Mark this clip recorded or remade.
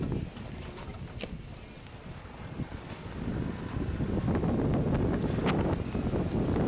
recorded